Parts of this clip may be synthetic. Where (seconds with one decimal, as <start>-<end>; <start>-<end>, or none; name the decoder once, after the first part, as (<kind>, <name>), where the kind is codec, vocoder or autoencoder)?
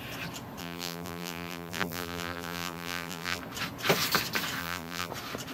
0.6-3.4 (vocoder, BigVGAN v2); 4.6-5.1